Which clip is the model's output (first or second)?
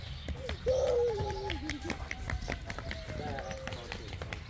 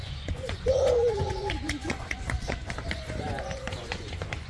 second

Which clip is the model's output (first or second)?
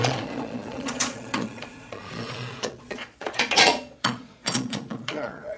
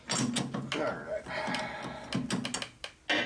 first